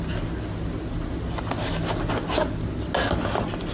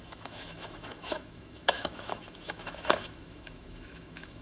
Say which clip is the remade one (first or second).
second